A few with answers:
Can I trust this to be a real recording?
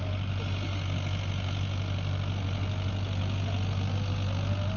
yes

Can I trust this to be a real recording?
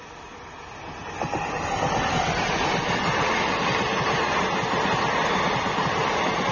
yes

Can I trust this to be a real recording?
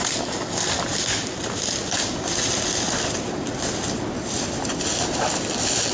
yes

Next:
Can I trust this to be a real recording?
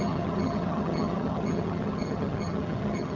no